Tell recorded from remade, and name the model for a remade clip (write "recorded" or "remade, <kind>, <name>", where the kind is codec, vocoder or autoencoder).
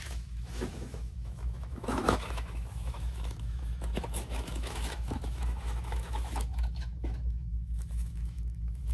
remade, autoencoder, DAC-VAE